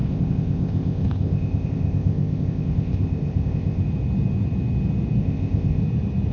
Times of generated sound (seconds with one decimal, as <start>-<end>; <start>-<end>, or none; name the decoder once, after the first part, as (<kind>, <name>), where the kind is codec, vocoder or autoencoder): 0.0-3.8 (codec, ZipCodec); 5.2-5.8